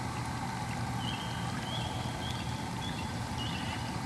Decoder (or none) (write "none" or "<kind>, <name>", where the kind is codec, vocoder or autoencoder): none